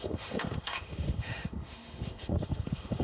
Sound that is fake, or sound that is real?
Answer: fake